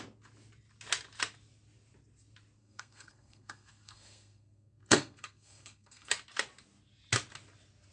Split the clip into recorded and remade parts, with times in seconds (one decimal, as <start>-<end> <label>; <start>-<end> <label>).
0.0-2.6 recorded; 2.6-6.1 remade; 6.1-7.9 recorded